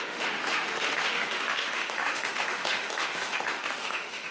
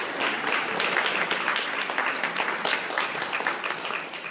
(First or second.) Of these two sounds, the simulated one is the first